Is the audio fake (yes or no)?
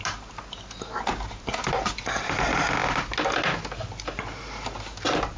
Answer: no